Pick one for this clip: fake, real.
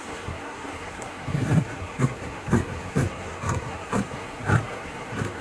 fake